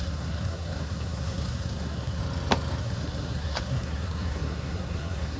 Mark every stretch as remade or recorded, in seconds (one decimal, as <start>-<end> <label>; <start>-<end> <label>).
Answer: 0.0-2.2 remade; 2.2-2.8 recorded; 2.8-5.4 remade